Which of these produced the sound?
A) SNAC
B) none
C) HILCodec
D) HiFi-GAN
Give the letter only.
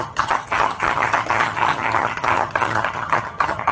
D